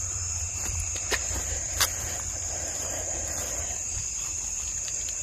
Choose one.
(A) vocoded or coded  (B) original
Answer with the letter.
A